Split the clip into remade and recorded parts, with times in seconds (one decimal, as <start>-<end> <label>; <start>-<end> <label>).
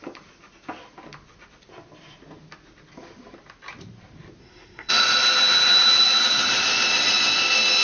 0.0-4.4 recorded; 4.4-4.9 remade; 4.9-7.8 recorded